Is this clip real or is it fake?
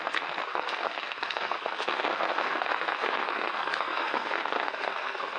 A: fake